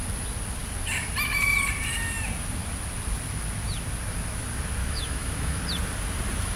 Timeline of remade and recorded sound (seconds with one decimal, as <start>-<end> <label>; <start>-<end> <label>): 0.0-4.8 recorded; 4.8-5.6 remade; 5.6-6.6 recorded